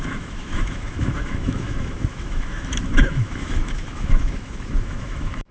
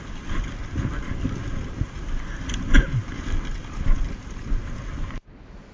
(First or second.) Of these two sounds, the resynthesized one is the first